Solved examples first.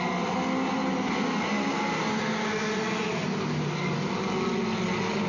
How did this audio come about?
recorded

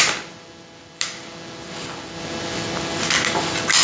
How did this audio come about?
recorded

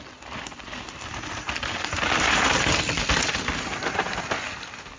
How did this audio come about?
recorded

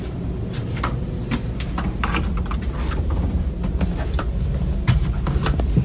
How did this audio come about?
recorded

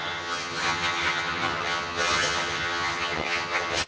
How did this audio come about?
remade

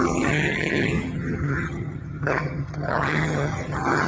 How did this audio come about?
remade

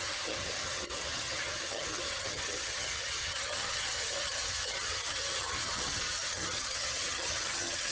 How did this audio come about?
remade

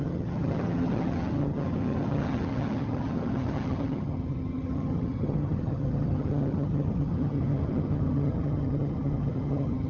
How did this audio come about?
remade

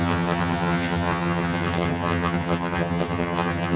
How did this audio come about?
remade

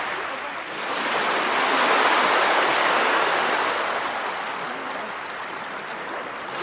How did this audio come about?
recorded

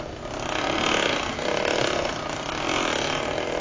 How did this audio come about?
recorded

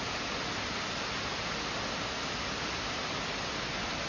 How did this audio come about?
recorded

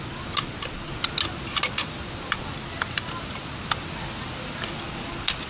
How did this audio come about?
recorded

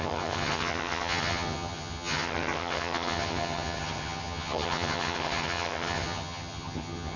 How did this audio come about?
remade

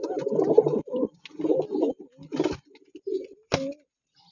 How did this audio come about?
recorded